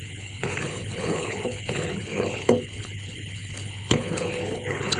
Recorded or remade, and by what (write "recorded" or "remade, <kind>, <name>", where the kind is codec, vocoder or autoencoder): remade, codec, HILCodec